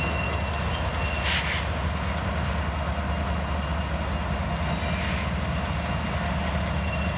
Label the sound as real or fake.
real